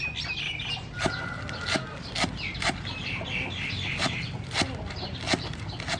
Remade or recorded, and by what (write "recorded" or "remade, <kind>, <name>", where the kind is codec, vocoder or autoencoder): recorded